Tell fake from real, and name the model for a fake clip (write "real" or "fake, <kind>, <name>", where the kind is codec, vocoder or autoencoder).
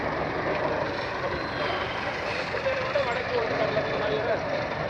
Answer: fake, vocoder, BigVGAN v2